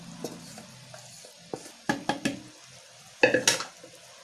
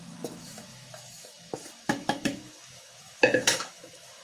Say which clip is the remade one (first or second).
second